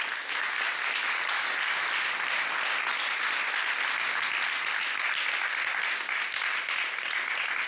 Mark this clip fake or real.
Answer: real